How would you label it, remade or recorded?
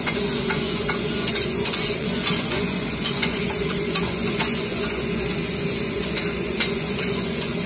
remade